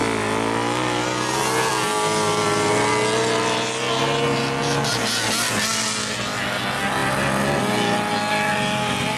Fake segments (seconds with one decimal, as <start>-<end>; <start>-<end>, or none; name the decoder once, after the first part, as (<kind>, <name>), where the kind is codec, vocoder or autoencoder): none

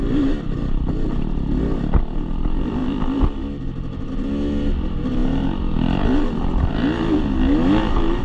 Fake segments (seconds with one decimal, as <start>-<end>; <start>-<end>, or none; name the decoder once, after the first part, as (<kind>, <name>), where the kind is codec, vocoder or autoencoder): none

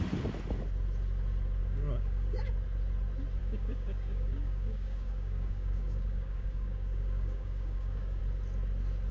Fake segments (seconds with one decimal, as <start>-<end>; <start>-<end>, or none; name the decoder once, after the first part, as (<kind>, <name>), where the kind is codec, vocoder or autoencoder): 1.6-2.5 (codec, DAC); 3.4-8.2

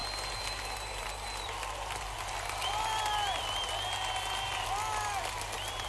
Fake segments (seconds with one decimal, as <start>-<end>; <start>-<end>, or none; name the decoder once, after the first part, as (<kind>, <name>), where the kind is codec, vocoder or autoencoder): none

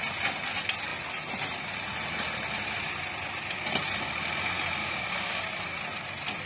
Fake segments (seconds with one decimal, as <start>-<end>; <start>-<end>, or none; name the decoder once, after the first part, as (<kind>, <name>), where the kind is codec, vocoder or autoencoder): 4.8-5.4 (codec, DAC)

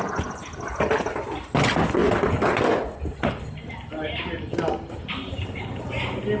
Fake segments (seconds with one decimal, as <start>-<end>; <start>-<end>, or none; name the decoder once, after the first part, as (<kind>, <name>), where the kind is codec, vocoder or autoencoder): none